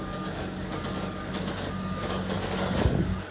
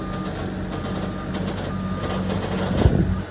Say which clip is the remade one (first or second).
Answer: first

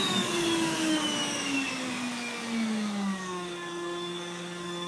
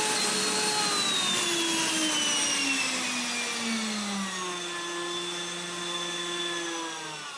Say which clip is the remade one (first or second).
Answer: first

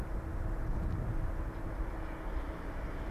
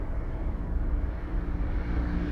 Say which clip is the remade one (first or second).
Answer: second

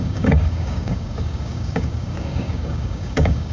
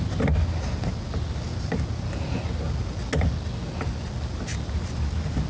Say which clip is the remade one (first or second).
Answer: first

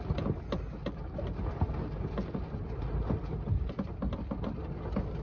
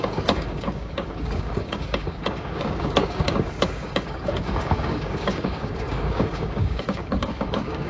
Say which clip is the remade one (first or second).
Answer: second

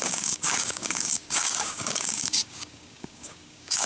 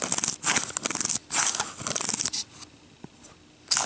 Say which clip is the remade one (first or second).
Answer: first